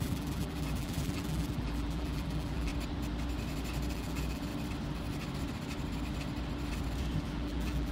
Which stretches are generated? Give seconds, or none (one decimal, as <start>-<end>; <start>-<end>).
0.0-2.7; 3.9-4.5; 7.2-7.9